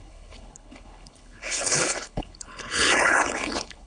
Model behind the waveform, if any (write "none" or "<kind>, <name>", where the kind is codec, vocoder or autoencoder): codec, HILCodec